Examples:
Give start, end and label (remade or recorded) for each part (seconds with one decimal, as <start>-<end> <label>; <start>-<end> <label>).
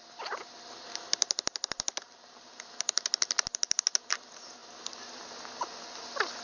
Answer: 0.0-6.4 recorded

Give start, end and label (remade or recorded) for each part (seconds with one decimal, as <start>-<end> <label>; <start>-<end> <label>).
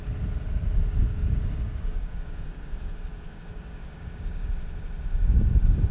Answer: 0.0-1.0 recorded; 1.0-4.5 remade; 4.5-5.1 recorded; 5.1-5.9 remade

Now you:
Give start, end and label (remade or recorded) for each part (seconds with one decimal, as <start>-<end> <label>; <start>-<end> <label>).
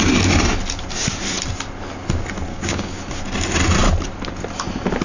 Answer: 0.0-2.5 recorded; 2.5-3.0 remade; 3.0-5.0 recorded